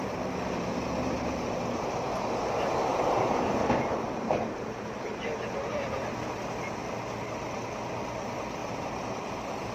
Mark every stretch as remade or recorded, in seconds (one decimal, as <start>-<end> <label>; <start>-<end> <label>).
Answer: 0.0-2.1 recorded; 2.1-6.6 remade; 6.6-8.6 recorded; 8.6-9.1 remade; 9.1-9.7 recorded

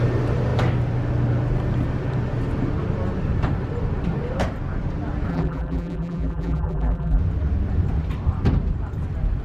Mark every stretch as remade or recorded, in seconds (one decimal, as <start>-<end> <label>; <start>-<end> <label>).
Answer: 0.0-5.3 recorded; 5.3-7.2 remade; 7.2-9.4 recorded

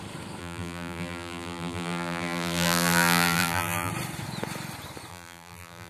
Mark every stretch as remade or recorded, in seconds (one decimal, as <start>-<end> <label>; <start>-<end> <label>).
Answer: 0.0-0.4 recorded; 0.4-3.9 remade; 3.9-5.1 recorded; 5.1-5.9 remade

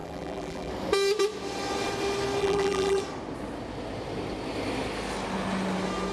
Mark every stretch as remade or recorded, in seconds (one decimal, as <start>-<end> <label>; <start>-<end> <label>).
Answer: 0.0-0.7 remade; 0.7-2.4 recorded; 2.4-3.0 remade; 3.0-6.1 recorded